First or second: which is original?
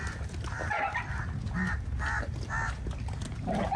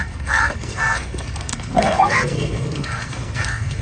first